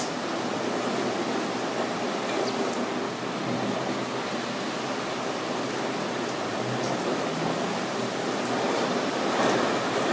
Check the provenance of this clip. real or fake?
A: real